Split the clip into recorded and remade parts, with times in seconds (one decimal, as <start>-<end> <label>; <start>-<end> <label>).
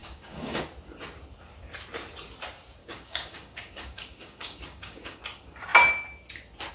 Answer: 0.0-0.6 remade; 0.6-2.8 recorded; 2.8-5.2 remade; 5.2-6.7 recorded